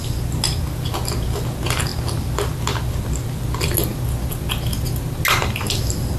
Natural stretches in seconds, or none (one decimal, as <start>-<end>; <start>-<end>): 0.0-6.2